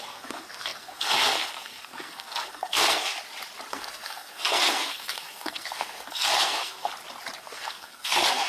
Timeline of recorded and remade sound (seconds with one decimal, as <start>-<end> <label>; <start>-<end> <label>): 0.0-3.1 remade; 3.1-3.7 recorded; 3.7-6.9 remade; 6.9-7.4 recorded; 7.4-8.5 remade